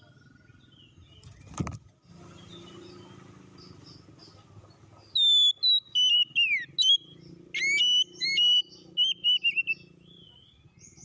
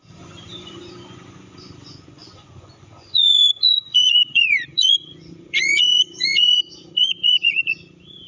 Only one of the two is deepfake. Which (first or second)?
second